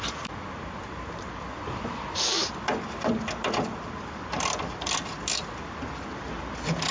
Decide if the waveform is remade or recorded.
recorded